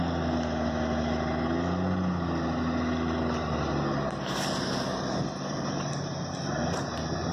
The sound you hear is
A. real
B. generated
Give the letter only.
A